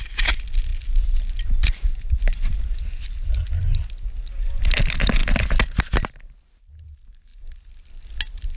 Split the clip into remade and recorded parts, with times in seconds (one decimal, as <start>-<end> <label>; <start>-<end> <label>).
0.0-8.6 recorded